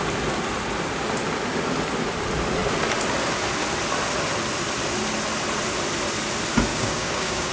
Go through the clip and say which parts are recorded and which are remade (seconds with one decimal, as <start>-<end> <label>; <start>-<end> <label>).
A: 0.0-6.7 recorded; 6.7-7.5 remade